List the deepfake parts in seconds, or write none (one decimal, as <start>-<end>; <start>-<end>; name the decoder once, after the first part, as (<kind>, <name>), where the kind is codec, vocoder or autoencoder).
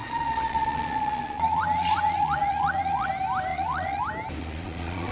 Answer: 0.0-3.1 (vocoder, Vocos); 3.5-4.0; 4.4-5.1